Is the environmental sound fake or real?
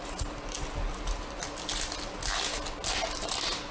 real